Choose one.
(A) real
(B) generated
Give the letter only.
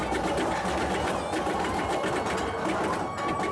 A